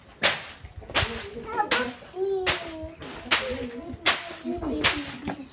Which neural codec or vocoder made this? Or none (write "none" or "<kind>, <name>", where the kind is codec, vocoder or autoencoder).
none